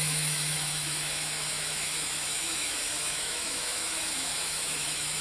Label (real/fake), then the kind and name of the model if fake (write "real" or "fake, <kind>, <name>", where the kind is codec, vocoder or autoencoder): fake, autoencoder, DAC-VAE